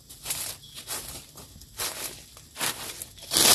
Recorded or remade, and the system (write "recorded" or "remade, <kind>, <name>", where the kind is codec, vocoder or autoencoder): recorded